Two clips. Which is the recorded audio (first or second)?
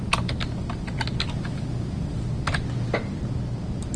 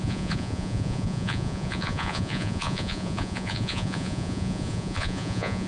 first